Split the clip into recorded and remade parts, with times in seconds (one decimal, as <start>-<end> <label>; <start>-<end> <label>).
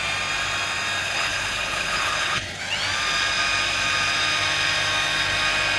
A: 0.0-1.0 recorded; 1.0-2.6 remade; 2.6-5.8 recorded